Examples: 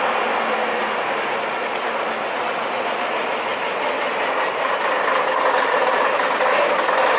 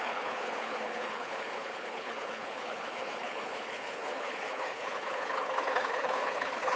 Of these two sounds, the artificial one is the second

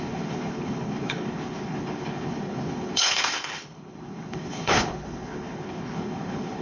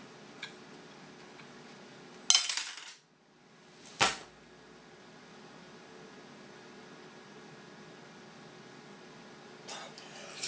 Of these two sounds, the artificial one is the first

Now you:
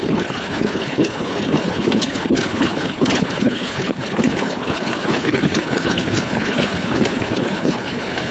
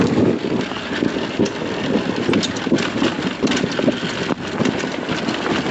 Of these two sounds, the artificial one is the first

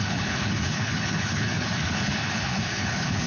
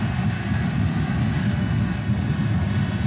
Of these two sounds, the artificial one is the first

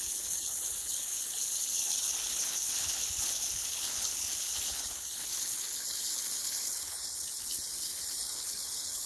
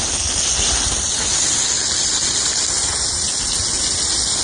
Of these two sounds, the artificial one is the first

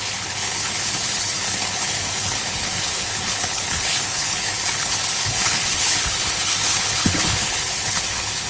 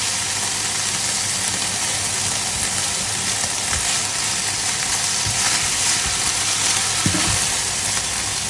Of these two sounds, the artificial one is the first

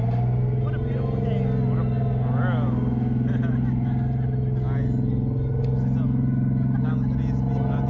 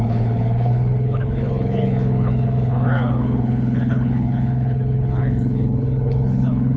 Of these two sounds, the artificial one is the second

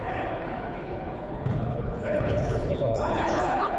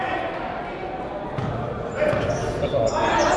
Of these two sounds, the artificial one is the first